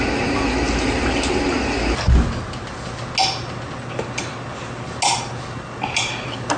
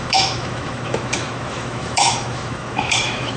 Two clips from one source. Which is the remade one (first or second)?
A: second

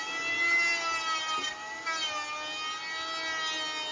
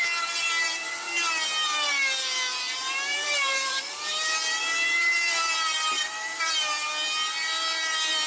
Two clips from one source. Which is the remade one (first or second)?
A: second